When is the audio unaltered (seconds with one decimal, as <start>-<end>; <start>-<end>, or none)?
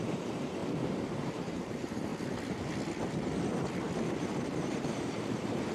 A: 0.6-1.1; 2.1-4.7